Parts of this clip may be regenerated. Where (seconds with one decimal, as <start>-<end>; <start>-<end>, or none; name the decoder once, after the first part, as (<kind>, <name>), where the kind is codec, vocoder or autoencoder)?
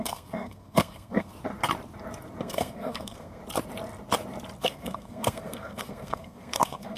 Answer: 0.0-1.3 (codec, SNAC); 2.4-3.4; 4.6-7.0